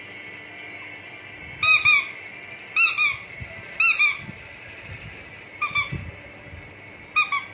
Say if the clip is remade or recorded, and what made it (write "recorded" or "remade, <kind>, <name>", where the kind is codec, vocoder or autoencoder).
recorded